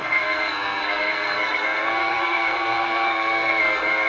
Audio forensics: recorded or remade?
remade